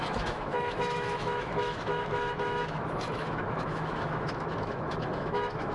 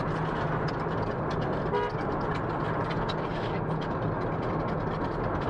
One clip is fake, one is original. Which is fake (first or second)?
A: first